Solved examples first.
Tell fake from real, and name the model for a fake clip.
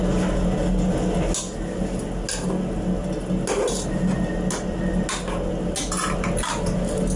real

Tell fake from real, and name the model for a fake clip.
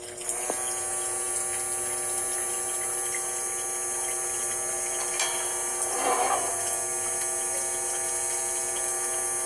real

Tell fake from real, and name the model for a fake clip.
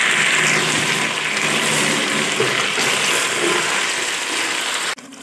real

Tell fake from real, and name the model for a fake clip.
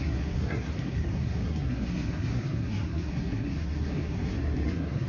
fake, codec, SNAC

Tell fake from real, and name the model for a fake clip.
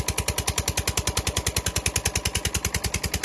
real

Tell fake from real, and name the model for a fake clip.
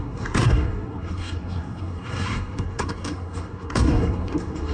fake, codec, SNAC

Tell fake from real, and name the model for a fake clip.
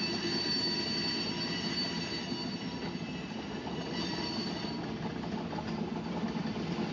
real